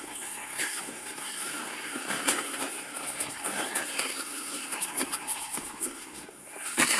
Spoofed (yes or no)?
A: yes